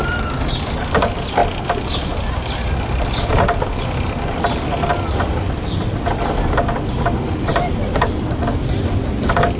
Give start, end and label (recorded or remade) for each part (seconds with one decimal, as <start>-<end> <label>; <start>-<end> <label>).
0.0-9.6 recorded